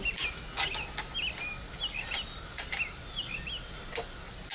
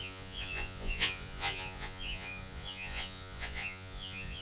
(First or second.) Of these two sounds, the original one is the first